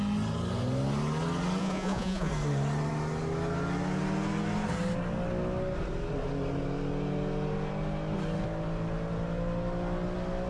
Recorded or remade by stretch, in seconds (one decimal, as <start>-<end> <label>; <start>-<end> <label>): 0.0-1.6 recorded; 1.6-2.3 remade; 2.3-10.5 recorded